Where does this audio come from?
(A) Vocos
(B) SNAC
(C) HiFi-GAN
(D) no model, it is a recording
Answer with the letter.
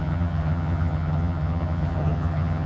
C